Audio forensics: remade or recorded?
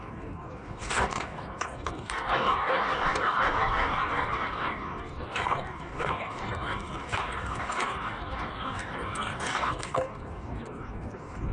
remade